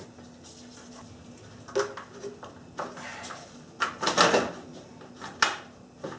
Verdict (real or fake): real